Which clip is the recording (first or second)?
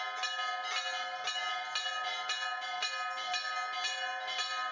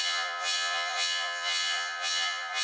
first